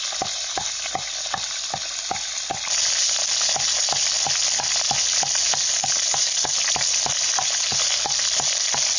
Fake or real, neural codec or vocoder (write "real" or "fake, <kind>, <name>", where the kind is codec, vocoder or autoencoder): real